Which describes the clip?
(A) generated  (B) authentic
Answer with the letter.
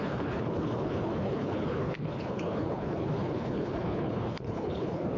A